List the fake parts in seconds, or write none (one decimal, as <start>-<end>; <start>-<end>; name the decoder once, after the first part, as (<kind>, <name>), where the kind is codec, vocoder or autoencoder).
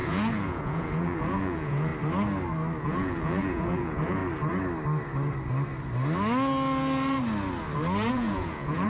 0.0-1.9 (vocoder, Vocos); 2.8-4.2; 8.1-8.9